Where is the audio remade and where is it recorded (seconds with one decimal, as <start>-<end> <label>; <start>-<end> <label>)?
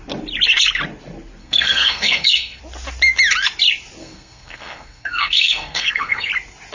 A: 0.0-1.4 recorded; 1.4-2.6 remade; 2.6-4.0 recorded; 4.0-6.3 remade; 6.3-6.7 recorded